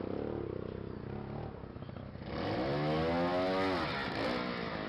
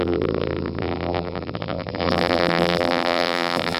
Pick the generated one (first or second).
second